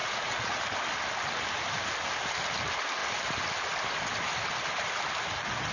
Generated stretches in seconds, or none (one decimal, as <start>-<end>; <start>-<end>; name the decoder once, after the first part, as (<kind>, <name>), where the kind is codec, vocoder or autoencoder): 0.0-0.6 (vocoder, Vocos)